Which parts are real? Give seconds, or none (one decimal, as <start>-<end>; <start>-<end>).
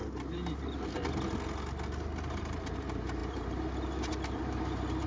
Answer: 0.0-2.3